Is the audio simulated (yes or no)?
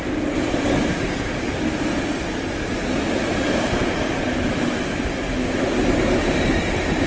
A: no